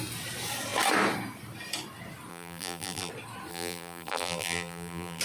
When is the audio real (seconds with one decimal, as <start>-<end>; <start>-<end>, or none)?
0.0-2.3; 3.1-3.5